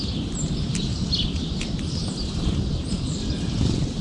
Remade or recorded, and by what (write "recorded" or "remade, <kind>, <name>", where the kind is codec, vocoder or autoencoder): recorded